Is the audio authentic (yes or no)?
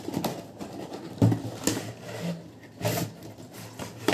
yes